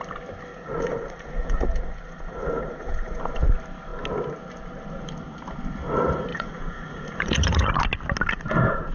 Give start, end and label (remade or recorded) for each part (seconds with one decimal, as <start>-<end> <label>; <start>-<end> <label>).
0.0-0.5 recorded; 0.5-3.2 remade; 3.2-6.3 recorded; 6.3-7.7 remade; 7.7-8.9 recorded